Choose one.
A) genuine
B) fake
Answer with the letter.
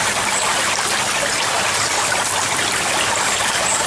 A